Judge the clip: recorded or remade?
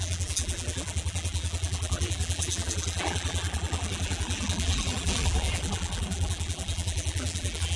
remade